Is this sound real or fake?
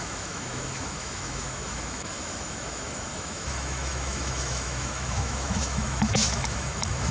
fake